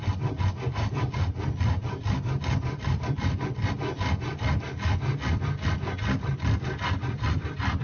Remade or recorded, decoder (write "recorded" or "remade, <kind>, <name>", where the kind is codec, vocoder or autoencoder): recorded